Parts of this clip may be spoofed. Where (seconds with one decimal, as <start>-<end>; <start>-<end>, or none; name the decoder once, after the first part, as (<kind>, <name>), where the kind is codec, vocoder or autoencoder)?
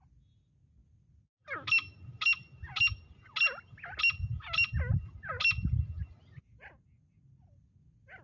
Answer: none